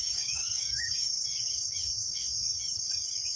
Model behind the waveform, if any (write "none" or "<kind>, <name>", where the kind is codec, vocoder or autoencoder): codec, DAC